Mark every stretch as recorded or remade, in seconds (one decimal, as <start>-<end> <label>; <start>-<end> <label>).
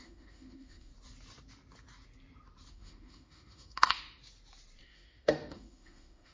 0.0-0.9 remade; 0.9-2.7 recorded; 2.7-4.2 remade; 4.2-4.8 recorded; 4.8-6.3 remade